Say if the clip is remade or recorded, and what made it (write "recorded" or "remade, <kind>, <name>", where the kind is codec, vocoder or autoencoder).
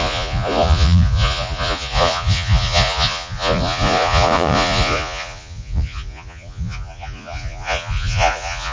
remade, vocoder, Vocos